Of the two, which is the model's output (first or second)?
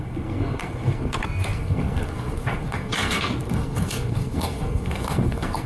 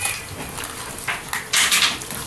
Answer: first